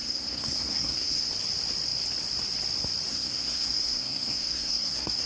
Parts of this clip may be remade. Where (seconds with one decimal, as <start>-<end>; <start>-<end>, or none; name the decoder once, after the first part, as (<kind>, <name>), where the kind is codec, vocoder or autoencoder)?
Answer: 0.0-1.3 (codec, SNAC); 3.1-5.3